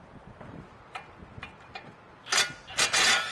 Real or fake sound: real